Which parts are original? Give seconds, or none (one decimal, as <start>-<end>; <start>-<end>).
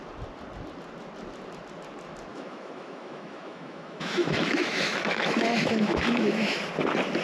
0.0-2.3; 6.6-7.2